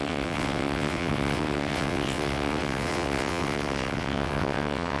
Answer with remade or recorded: remade